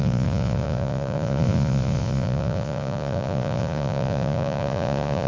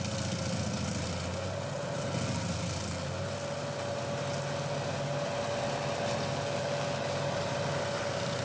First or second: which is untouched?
second